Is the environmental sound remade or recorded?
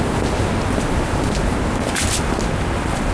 remade